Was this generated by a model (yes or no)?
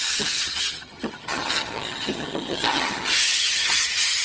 yes